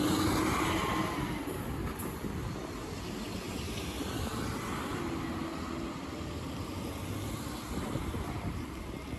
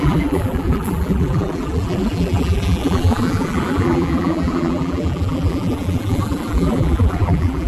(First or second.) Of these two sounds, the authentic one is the first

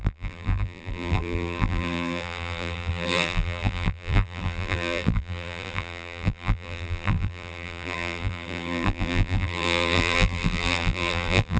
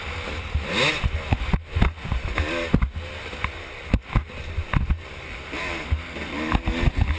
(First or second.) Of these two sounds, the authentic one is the second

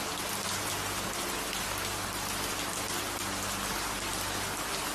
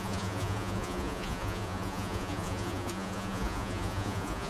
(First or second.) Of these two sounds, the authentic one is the first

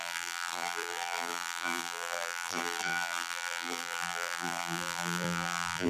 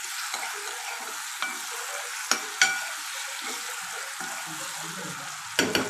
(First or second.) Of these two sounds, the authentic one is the second